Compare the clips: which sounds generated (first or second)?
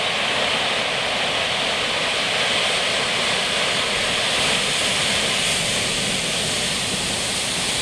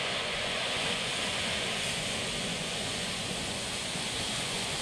second